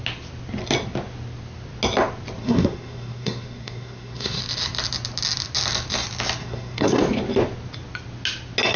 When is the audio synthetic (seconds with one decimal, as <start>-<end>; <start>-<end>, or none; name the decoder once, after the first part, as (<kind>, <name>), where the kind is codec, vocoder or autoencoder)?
2.4-4.4 (codec, SNAC); 6.4-7.0

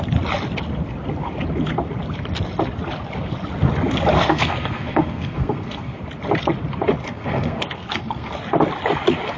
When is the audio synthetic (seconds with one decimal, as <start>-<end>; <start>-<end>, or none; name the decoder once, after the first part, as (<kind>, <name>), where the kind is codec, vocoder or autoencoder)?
4.3-6.0 (codec, SNAC); 7.0-8.3